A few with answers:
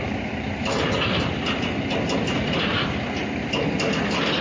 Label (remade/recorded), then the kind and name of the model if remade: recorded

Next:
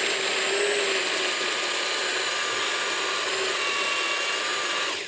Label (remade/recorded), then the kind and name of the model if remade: recorded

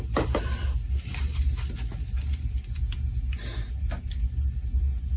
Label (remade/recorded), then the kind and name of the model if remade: recorded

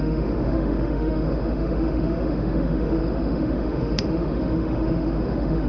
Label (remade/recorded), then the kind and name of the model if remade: remade, autoencoder, DAC-VAE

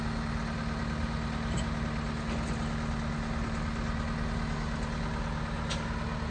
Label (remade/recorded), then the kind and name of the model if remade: recorded